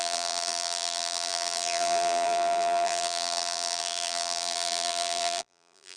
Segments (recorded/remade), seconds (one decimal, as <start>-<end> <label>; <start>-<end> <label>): 0.0-6.0 remade